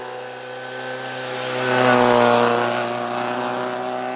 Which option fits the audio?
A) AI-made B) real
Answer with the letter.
B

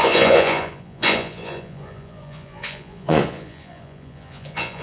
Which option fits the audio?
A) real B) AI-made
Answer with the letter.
B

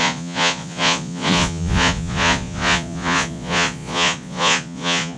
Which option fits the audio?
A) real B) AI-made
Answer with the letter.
B